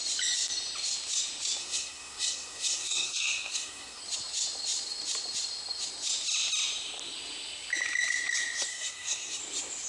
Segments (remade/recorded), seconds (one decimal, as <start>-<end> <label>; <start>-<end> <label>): 0.0-1.6 recorded; 1.6-4.0 remade; 4.0-8.7 recorded; 8.7-9.4 remade; 9.4-9.9 recorded

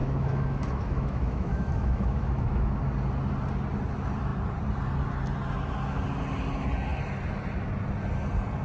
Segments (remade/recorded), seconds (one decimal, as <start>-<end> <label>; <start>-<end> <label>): 0.0-2.8 remade; 2.8-8.6 recorded

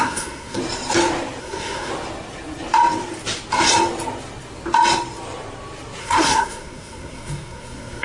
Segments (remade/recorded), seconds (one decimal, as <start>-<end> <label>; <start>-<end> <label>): 0.0-0.6 remade; 0.6-1.4 recorded; 1.4-1.9 remade; 1.9-6.0 recorded; 6.0-8.0 remade